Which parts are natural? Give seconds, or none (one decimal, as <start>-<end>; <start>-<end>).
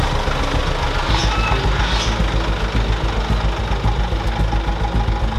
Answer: 0.0-5.4